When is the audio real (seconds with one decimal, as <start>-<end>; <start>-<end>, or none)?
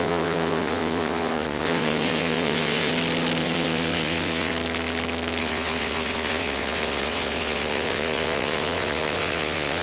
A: 2.9-3.4; 4.5-5.4